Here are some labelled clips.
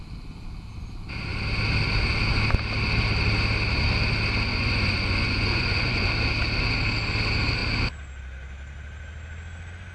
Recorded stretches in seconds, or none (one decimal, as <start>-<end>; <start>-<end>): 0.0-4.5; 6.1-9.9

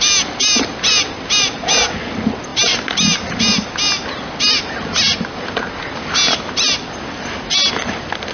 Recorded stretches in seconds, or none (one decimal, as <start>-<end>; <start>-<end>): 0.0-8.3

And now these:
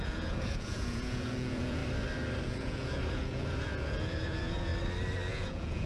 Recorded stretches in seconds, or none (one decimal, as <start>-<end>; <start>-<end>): 1.8-2.4; 4.7-5.3

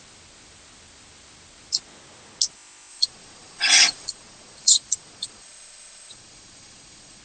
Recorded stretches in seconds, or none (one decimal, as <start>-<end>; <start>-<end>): 0.0-2.9